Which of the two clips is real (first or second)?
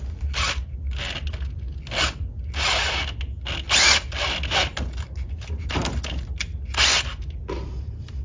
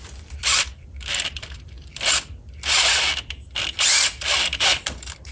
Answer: first